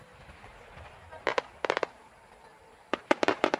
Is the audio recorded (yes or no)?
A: no